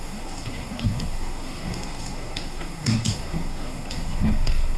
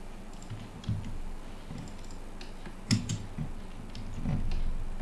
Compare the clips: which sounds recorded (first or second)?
second